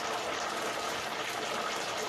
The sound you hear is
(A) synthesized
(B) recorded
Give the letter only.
B